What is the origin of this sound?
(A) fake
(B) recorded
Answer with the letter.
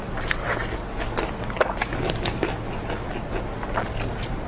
B